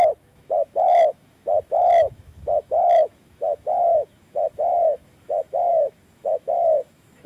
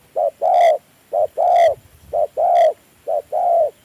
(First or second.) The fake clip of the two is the first